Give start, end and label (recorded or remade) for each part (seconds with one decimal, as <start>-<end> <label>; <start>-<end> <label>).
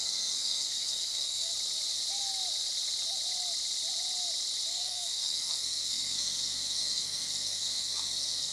0.0-1.5 remade; 1.5-4.7 recorded; 4.7-8.5 remade